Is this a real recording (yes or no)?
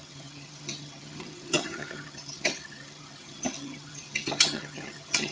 no